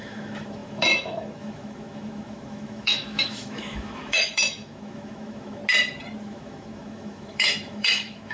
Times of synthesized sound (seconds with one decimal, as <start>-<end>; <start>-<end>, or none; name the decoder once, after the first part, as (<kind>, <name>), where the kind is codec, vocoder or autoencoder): 0.0-5.6 (autoencoder, DAC-VAE); 6.2-8.3